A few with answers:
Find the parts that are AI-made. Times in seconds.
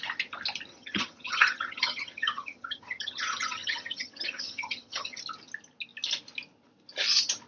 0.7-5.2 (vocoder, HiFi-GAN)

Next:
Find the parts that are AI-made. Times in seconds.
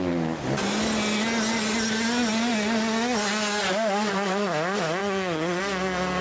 5.0-5.6 (vocoder, HiFi-GAN)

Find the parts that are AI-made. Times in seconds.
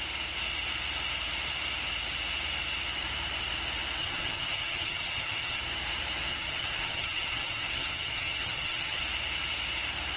4.0-5.6 (vocoder, HiFi-GAN); 6.3-9.0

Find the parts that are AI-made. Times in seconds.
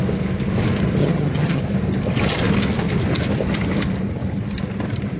1.0-1.6 (vocoder, HiFi-GAN)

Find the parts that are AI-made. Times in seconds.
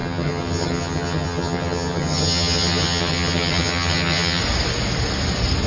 0.0-4.4 (vocoder, HiFi-GAN)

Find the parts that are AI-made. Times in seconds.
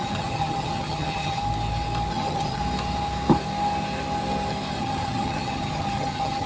0.0-1.4 (vocoder, HiFi-GAN); 2.1-2.6; 4.8-6.5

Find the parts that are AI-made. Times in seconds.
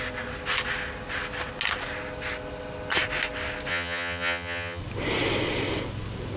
3.7-4.8 (vocoder, HiFi-GAN)